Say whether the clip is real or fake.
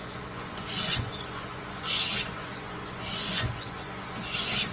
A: fake